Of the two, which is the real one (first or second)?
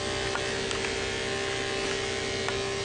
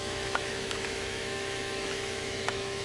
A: first